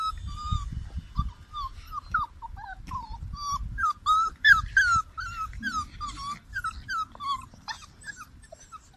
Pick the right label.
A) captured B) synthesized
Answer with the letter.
A